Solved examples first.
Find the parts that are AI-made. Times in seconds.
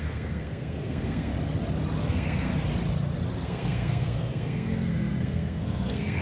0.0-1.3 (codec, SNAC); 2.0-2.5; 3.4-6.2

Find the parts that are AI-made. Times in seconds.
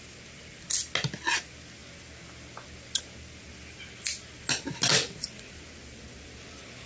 none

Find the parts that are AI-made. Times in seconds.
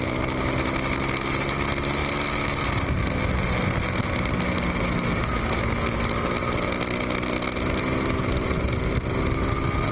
none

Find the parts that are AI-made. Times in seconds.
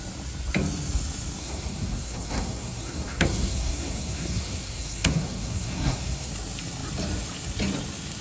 1.4-6.3 (codec, SNAC)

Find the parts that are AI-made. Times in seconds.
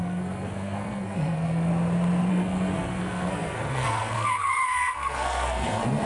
0.0-1.7 (codec, SNAC); 2.3-6.1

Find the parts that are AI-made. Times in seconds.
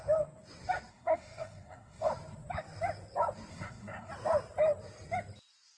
0.9-2.1 (codec, SNAC); 3.5-4.1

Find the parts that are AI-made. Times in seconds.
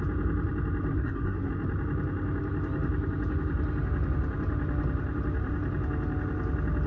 0.9-1.5 (codec, SNAC)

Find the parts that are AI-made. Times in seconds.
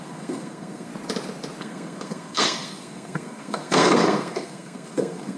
0.0-0.9 (codec, SNAC); 1.6-5.4